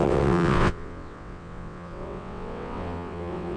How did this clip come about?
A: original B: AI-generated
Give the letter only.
B